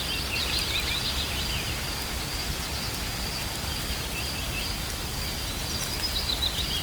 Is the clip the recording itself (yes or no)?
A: yes